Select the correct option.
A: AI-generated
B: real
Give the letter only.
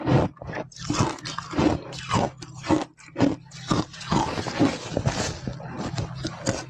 B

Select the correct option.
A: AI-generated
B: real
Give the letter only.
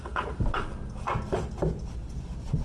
B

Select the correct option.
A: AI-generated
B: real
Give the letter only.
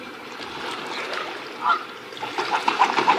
A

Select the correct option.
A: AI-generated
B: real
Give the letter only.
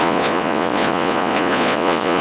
A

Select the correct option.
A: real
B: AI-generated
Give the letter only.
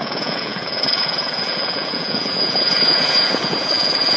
B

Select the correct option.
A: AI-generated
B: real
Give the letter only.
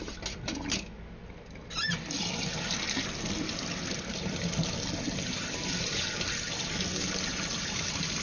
B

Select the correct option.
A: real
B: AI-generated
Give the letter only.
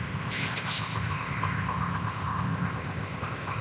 B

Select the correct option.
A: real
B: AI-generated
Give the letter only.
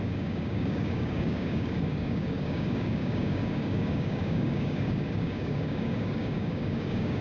B